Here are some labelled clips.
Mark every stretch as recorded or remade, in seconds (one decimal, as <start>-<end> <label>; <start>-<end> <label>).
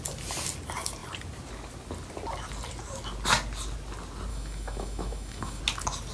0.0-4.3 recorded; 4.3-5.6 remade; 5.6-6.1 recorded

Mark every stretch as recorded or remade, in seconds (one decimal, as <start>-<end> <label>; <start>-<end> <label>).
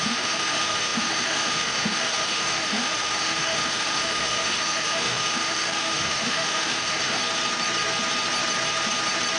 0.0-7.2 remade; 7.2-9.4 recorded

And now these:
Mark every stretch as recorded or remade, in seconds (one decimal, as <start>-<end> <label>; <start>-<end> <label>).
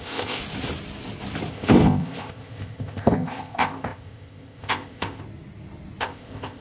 0.0-0.4 remade; 0.4-1.5 recorded; 1.5-5.2 remade; 5.2-6.0 recorded; 6.0-6.6 remade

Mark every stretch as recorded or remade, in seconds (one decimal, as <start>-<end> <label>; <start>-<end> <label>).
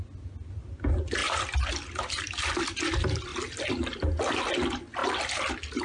0.0-5.8 recorded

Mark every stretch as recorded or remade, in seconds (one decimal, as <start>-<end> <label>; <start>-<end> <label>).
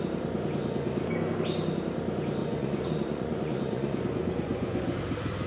0.0-2.4 recorded; 2.4-5.0 remade; 5.0-5.5 recorded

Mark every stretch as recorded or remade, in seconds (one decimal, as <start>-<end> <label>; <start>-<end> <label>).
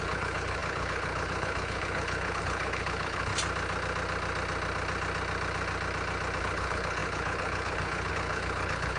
0.0-3.3 remade; 3.3-6.4 recorded; 6.4-9.0 remade